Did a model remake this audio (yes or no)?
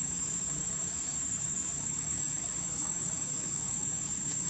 yes